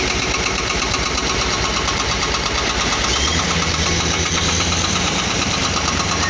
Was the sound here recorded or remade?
remade